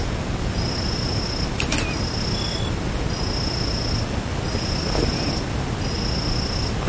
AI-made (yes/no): no